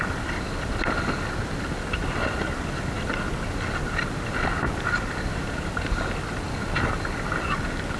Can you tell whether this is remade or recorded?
recorded